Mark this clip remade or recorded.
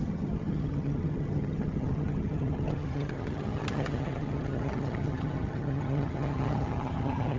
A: remade